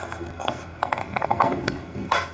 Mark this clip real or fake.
fake